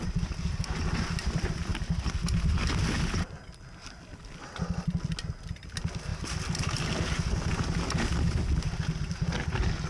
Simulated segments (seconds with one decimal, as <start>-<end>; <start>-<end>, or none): none